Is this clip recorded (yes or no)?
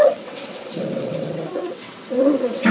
no